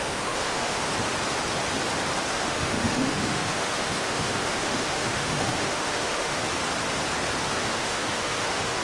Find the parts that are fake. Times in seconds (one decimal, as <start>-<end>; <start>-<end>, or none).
0.0-0.8; 2.3-6.4; 7.4-8.8

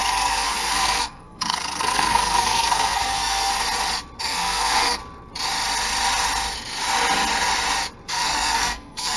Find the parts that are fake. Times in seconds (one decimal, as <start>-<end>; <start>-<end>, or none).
0.0-3.5; 4.2-5.0; 8.1-9.2

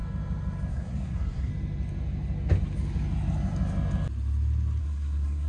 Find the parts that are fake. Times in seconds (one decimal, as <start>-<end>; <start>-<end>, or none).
0.7-1.5; 4.8-5.5